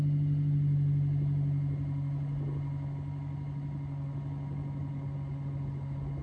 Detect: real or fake real